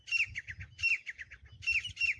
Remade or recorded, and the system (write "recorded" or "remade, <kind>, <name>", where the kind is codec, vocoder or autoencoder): recorded